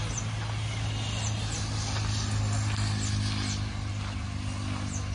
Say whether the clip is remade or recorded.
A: recorded